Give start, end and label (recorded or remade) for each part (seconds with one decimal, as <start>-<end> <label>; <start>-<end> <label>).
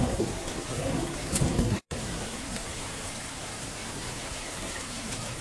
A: 0.0-5.4 remade